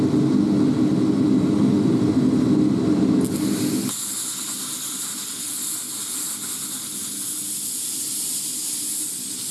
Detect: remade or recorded recorded